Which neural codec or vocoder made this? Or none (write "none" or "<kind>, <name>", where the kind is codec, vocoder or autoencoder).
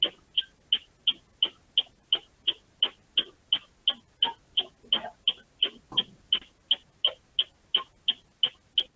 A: none